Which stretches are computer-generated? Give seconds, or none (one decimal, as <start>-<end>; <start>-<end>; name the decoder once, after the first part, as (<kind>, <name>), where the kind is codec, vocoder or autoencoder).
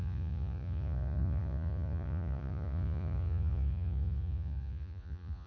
0.0-5.5 (vocoder, Vocos)